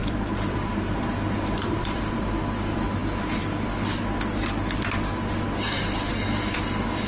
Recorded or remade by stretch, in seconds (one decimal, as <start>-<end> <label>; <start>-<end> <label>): 0.0-2.0 remade; 2.0-7.1 recorded